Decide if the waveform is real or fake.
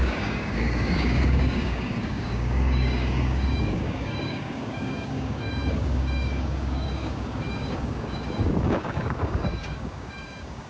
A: fake